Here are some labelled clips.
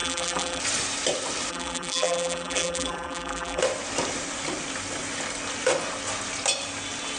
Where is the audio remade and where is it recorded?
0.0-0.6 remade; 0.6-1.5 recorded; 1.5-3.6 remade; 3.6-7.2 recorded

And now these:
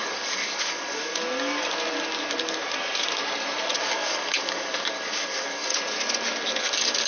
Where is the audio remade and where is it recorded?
0.0-1.1 remade; 1.1-3.8 recorded; 3.8-5.7 remade; 5.7-6.6 recorded; 6.6-7.1 remade

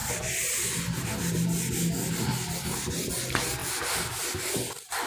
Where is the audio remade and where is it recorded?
0.0-3.6 recorded; 3.6-5.1 remade

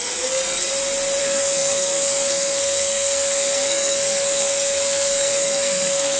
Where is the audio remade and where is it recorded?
0.0-0.7 remade; 0.7-1.2 recorded; 1.2-6.2 remade

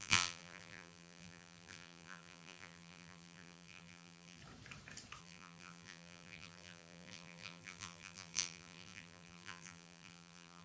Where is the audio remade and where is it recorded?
0.0-4.4 remade; 4.4-5.2 recorded; 5.2-10.6 remade